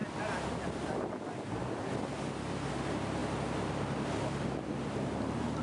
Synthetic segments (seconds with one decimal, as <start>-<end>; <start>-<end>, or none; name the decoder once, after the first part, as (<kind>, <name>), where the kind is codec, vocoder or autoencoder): none